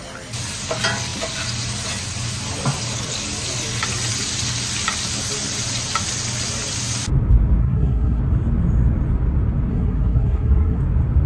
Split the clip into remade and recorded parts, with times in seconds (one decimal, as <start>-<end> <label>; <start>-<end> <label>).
0.0-7.6 recorded; 7.6-8.2 remade; 8.2-9.7 recorded; 9.7-10.8 remade; 10.8-11.3 recorded